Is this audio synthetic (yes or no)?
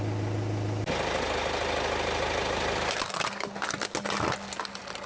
no